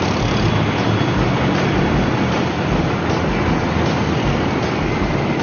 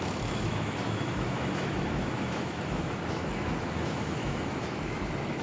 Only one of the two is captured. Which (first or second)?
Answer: first